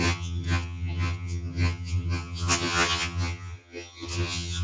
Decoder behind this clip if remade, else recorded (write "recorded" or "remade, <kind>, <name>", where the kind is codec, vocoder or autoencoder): remade, vocoder, HiFi-GAN